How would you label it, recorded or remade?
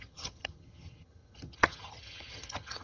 remade